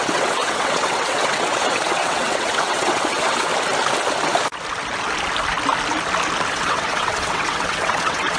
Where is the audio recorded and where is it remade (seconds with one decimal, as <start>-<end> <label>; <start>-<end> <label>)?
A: 0.0-3.5 remade; 3.5-6.5 recorded; 6.5-8.4 remade